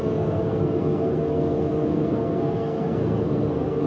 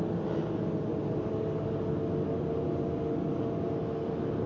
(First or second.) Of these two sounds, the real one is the second